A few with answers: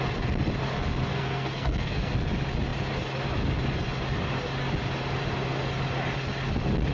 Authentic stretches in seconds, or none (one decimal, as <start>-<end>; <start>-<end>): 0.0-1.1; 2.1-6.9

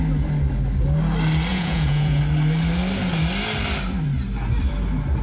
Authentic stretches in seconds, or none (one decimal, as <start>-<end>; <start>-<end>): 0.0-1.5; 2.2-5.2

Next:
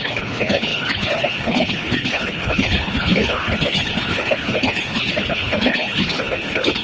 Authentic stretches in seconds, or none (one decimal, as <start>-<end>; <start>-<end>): none

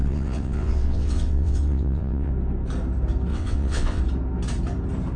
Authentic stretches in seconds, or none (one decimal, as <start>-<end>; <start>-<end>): 2.3-3.3; 4.0-5.2

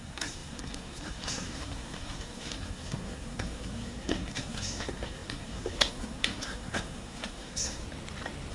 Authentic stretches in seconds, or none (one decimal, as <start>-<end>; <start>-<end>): 7.8-8.5